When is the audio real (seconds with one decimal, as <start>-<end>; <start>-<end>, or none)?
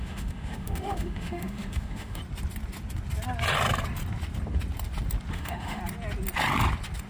2.2-5.3; 5.8-7.1